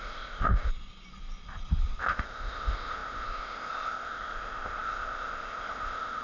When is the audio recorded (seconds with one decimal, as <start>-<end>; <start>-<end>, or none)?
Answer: 0.7-2.0